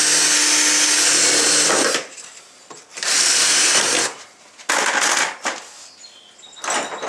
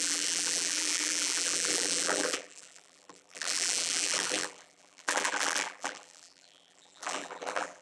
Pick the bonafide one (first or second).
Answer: first